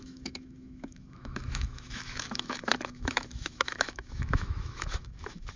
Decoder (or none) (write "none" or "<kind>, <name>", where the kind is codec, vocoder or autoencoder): autoencoder, DAC-VAE